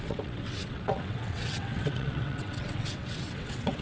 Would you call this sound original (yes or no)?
no